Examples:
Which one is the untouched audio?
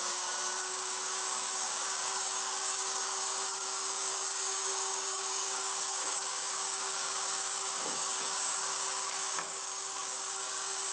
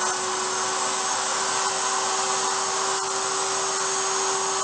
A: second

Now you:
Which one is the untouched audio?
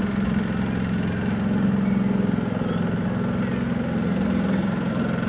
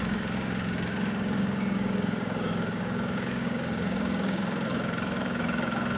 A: first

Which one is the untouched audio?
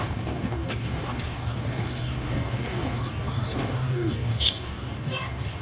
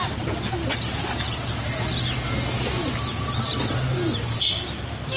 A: second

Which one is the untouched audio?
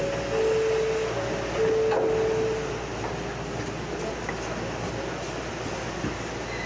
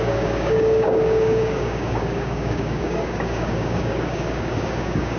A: first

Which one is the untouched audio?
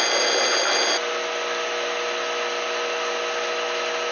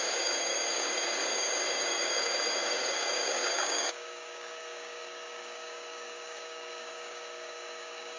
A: first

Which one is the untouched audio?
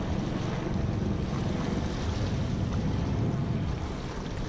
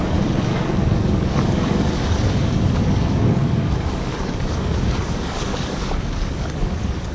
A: first